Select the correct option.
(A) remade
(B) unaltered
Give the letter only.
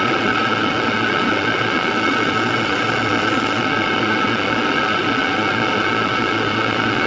A